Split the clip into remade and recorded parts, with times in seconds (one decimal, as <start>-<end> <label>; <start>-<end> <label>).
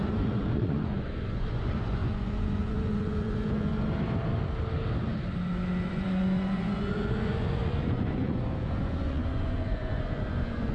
0.0-3.7 remade; 3.7-5.9 recorded; 5.9-10.7 remade